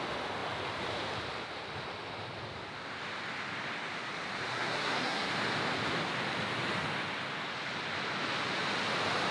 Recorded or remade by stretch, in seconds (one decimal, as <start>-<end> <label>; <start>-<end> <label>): 0.0-4.5 recorded; 4.5-5.3 remade; 5.3-9.3 recorded